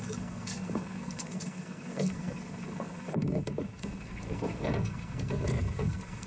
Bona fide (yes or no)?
no